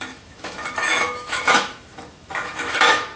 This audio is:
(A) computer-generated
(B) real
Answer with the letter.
A